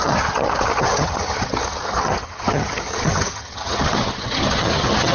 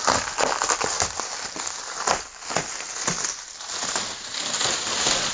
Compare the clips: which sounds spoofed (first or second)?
first